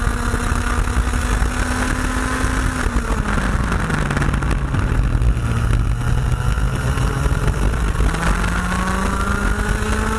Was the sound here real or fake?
real